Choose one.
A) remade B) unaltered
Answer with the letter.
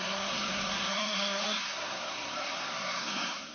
A